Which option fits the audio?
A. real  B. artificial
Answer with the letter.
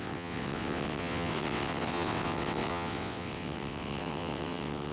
B